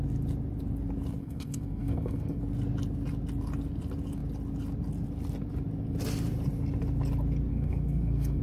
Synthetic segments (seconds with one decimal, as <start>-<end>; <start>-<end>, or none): 1.2-2.4; 7.5-8.4